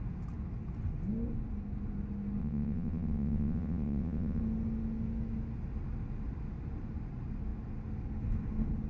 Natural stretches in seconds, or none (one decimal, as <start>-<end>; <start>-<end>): 0.0-2.4; 4.4-8.9